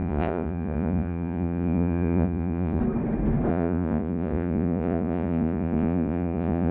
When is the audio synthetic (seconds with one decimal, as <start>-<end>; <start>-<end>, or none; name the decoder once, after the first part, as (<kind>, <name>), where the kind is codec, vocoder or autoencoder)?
0.0-2.8 (vocoder, Vocos); 3.5-6.7